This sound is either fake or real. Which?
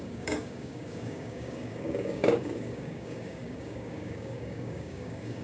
fake